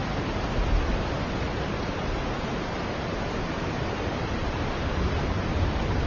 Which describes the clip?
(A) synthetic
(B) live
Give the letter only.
A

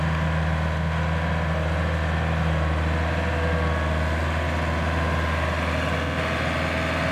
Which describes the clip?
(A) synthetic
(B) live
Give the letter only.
B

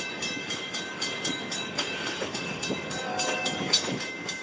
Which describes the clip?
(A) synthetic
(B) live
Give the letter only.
A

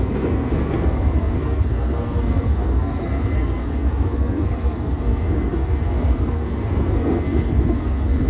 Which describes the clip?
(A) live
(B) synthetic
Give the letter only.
B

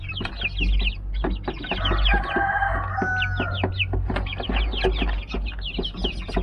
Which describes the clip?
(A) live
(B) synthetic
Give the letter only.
A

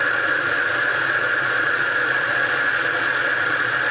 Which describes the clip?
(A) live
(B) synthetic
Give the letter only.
B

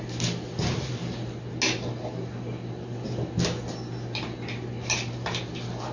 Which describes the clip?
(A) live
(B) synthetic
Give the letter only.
A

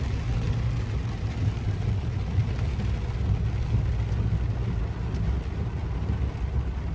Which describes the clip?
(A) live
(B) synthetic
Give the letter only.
A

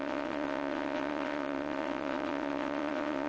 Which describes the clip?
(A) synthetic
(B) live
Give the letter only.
A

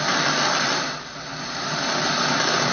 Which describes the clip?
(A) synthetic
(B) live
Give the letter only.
B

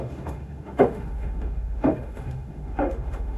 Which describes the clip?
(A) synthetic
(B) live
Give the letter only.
A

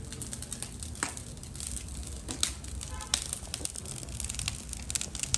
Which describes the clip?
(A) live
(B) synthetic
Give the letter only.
A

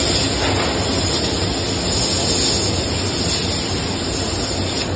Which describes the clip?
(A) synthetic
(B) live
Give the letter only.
B